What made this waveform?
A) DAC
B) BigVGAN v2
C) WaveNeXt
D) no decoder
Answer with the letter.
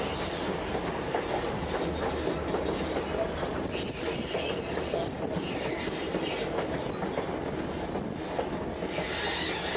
D